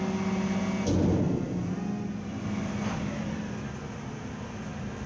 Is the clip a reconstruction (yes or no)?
no